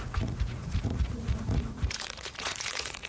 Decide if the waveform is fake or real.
fake